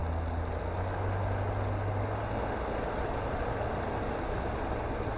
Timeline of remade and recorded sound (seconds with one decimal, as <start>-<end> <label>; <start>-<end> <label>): 0.0-5.2 recorded